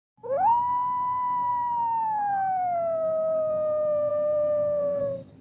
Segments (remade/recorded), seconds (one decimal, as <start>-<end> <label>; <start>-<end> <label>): 0.0-4.1 recorded; 4.1-5.0 remade; 5.0-5.4 recorded